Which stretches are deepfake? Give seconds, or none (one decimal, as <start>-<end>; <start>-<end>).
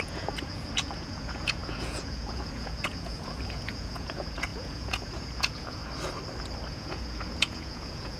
0.0-5.8; 6.7-8.2